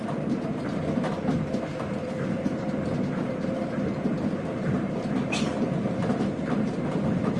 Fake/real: fake